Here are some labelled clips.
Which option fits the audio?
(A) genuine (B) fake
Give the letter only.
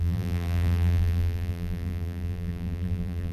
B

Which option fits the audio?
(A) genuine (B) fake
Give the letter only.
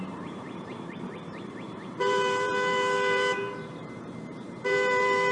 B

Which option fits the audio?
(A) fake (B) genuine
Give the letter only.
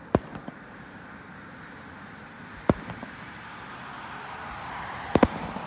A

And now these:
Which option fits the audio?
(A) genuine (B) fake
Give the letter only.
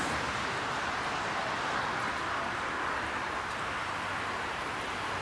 A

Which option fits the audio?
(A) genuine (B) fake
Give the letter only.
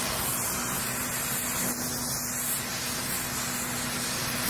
A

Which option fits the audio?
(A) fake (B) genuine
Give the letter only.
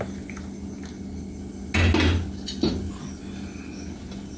B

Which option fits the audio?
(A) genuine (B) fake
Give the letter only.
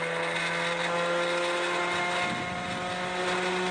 A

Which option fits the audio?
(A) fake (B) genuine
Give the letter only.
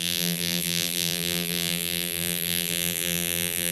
A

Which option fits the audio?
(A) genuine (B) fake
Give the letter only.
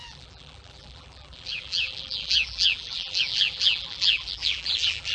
B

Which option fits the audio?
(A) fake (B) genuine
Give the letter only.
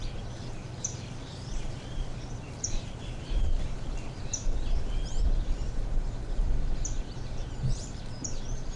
A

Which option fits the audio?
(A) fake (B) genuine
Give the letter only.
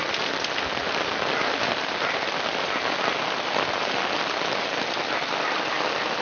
B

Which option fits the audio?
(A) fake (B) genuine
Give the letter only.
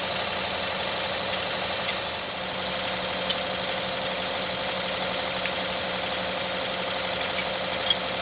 B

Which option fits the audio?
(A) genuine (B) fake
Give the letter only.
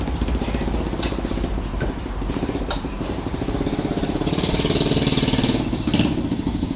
B